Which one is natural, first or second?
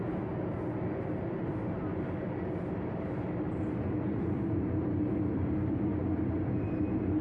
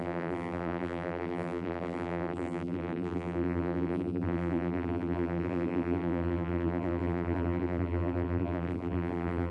first